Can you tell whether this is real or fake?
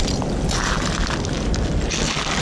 real